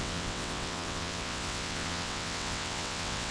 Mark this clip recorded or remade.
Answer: remade